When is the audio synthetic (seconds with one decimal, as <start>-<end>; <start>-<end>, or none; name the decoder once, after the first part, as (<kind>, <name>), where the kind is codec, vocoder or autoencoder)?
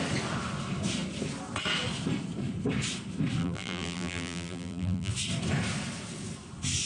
3.4-5.1 (vocoder, BigVGAN v2)